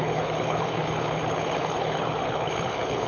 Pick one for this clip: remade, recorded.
remade